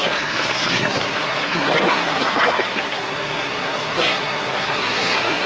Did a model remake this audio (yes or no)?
yes